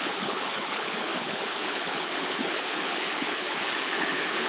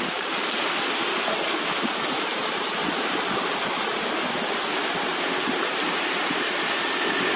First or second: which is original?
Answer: second